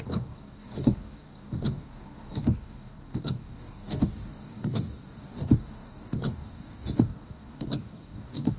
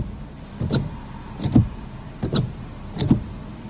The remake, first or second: first